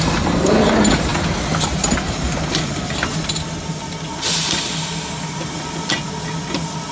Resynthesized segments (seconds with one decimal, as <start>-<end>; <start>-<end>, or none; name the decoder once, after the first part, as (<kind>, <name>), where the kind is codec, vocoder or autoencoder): none